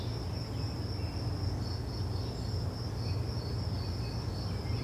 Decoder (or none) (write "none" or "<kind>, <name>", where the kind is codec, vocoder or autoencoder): none